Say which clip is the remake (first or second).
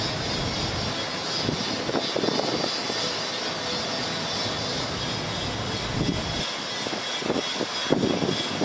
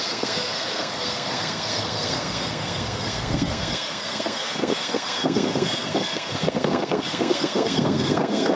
second